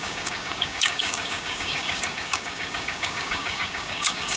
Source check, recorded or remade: remade